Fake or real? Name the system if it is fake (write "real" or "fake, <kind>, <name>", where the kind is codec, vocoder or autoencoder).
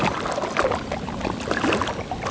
real